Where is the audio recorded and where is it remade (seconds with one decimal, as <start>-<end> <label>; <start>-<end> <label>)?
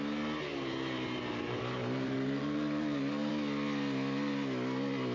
0.0-0.5 recorded; 0.5-3.3 remade; 3.3-5.1 recorded